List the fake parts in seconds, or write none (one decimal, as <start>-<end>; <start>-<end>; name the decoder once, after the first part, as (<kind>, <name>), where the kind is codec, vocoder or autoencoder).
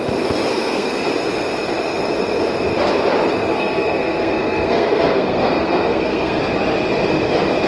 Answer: 0.5-1.1 (codec, SNAC); 3.5-6.4